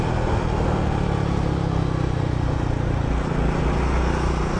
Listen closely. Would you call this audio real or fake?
real